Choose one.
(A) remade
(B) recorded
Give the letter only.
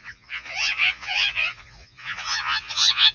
A